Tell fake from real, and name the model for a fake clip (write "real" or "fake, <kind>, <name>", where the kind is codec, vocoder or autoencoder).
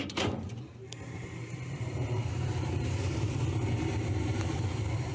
fake, vocoder, BigVGAN v2